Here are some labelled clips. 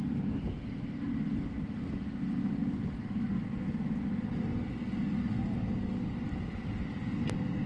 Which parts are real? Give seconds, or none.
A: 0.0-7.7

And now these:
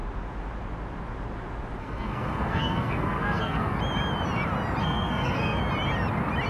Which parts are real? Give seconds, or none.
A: 0.0-1.8; 3.8-4.8; 5.6-6.5

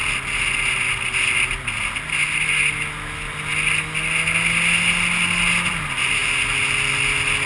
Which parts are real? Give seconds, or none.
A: 0.0-7.5

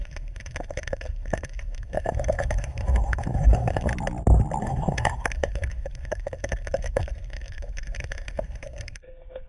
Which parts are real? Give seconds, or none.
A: 3.9-4.6